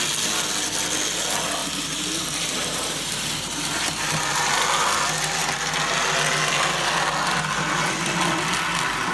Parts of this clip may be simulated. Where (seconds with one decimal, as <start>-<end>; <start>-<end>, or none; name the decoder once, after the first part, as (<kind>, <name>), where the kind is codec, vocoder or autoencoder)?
1.6-4.2 (vocoder, BigVGAN v2)